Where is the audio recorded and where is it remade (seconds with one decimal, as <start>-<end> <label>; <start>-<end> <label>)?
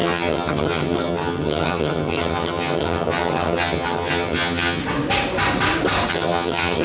0.0-4.8 remade; 4.8-6.1 recorded; 6.1-6.8 remade